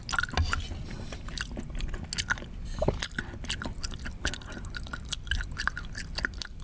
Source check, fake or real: real